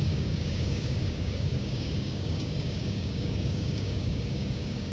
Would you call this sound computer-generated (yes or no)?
yes